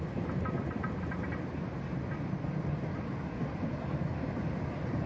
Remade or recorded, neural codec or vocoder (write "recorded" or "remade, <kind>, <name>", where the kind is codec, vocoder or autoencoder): recorded